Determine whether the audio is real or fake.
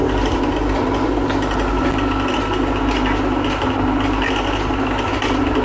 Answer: real